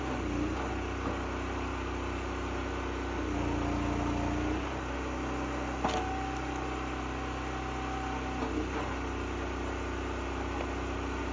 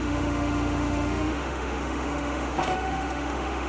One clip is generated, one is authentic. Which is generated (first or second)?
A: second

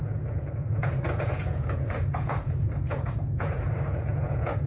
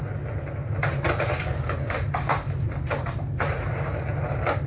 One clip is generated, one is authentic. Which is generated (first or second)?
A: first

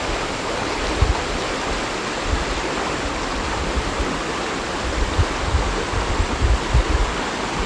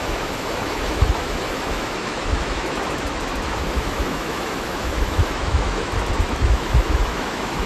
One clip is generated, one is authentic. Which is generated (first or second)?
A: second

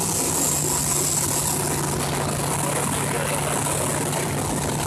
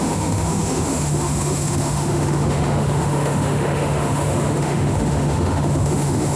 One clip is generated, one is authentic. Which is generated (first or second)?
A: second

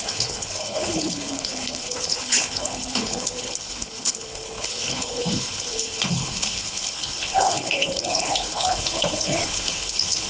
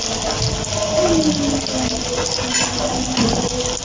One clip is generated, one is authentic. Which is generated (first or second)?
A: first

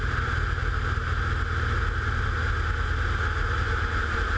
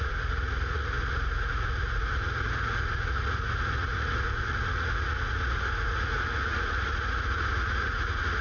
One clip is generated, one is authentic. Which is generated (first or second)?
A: second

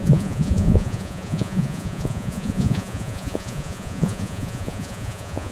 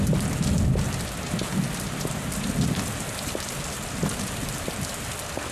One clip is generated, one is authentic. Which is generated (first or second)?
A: first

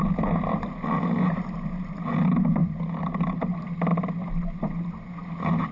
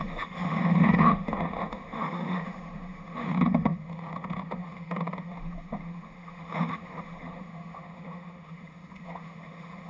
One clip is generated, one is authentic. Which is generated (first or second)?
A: second